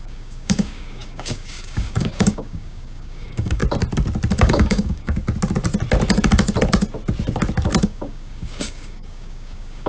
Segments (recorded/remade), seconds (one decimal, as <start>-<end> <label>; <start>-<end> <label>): 0.0-3.6 remade; 3.6-4.4 recorded; 4.4-5.2 remade; 5.2-7.8 recorded; 7.8-9.9 remade